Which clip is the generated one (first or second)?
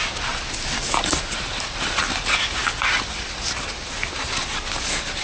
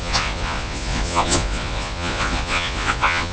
second